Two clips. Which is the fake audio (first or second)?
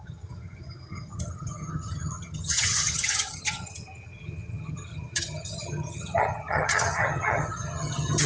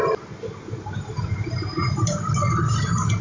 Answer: first